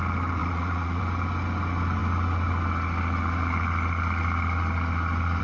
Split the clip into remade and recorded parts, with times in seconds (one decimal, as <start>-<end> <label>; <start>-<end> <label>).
0.0-0.4 recorded; 0.4-1.0 remade; 1.0-5.4 recorded